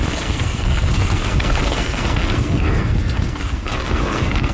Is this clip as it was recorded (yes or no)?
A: no